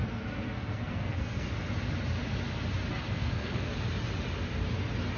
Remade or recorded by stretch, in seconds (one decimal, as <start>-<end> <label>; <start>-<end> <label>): 0.0-1.5 remade; 1.5-3.1 recorded; 3.1-3.7 remade; 3.7-5.2 recorded